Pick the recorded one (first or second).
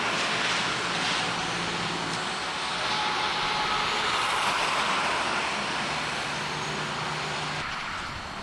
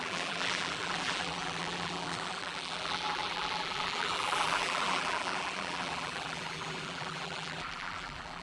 first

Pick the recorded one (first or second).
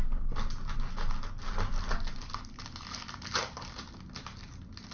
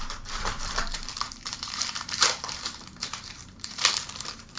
first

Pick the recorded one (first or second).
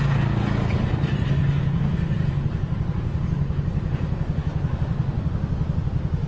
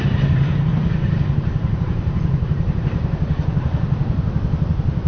first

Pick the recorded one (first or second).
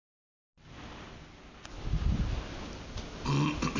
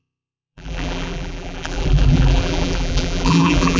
first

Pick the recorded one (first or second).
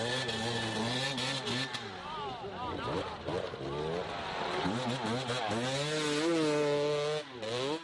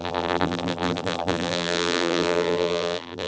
first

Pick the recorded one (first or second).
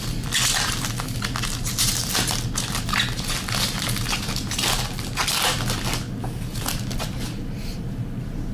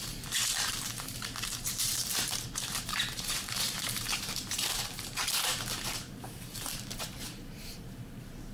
first